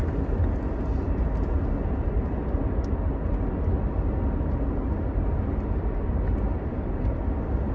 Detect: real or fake real